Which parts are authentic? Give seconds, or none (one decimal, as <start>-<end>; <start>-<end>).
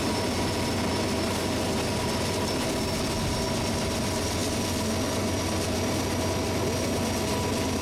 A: 0.0-7.8